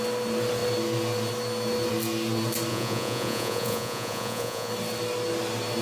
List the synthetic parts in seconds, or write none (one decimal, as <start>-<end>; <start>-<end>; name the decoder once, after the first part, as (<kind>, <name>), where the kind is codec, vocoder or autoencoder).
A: 2.7-4.7 (vocoder, Vocos)

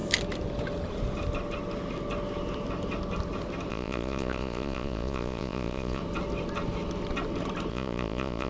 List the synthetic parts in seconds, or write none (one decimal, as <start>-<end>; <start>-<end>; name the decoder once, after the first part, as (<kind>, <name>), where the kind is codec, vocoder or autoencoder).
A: 3.7-6.0 (vocoder, Vocos); 7.7-8.5

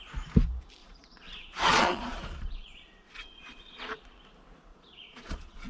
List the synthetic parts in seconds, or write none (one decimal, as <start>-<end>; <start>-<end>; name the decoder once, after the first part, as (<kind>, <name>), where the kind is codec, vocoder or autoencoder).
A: 0.8-4.0 (vocoder, Vocos); 4.7-5.7

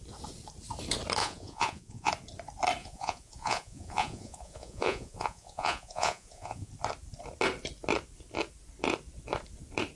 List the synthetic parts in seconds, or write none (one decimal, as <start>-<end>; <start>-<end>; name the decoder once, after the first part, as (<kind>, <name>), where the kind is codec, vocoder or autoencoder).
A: 1.2-2.1 (vocoder, Vocos); 2.8-6.7

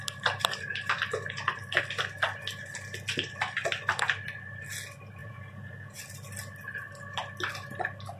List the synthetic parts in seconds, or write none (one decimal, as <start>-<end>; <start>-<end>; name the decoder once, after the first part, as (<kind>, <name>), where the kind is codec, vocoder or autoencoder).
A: 5.2-6.0 (vocoder, Vocos)

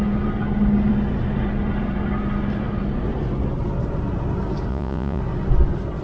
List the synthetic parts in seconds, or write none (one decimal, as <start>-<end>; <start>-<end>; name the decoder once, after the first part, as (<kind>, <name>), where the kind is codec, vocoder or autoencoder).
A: 4.7-5.2 (vocoder, Vocos)

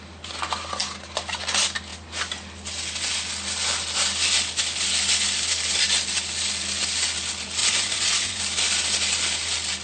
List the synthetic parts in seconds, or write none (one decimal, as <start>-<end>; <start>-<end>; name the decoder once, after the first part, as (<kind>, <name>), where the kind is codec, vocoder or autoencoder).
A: 7.6-8.4 (vocoder, Vocos)